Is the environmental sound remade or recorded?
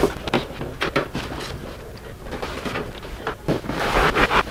recorded